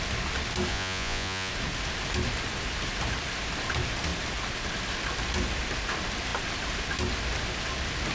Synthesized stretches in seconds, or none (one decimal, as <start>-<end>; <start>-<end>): 0.7-1.5